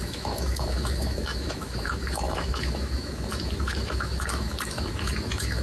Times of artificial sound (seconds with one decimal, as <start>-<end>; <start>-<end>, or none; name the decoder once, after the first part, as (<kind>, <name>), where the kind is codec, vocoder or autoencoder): 0.0-5.6 (autoencoder, DAC-VAE)